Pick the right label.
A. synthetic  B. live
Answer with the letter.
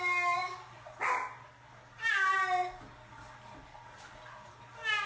B